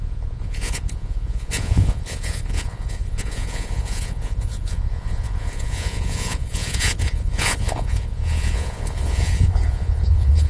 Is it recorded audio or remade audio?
remade